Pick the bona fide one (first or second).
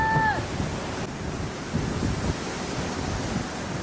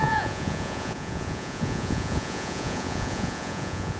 first